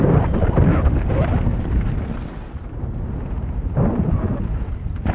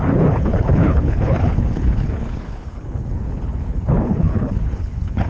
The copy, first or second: second